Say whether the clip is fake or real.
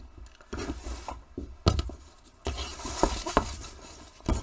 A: real